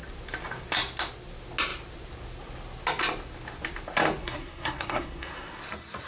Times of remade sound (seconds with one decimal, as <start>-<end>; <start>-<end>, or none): 4.2-5.6